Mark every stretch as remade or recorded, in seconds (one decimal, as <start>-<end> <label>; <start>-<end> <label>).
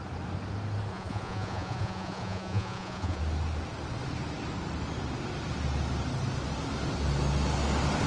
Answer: 0.0-0.9 recorded; 0.9-3.2 remade; 3.2-8.1 recorded